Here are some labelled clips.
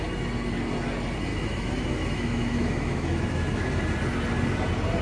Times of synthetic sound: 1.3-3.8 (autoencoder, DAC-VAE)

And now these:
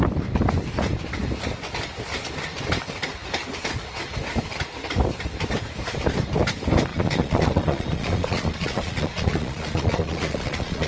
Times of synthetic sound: 6.9-10.9 (vocoder, Vocos)

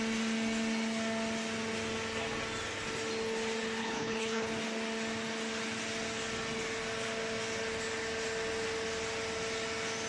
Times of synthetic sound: 3.8-4.5 (codec, HILCodec)

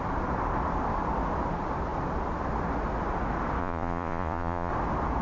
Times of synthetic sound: 3.6-4.7 (vocoder, Vocos)

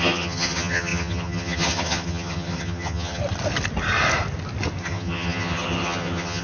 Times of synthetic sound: 0.0-3.2 (vocoder, HiFi-GAN); 4.8-6.4

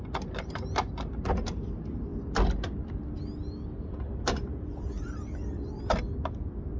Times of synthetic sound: none

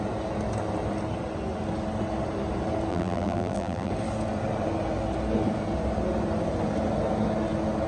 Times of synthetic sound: 2.9-3.9 (vocoder, BigVGAN v2)